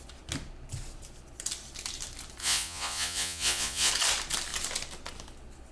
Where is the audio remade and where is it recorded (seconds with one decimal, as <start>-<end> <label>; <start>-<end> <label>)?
0.0-2.4 recorded; 2.4-3.9 remade; 3.9-5.7 recorded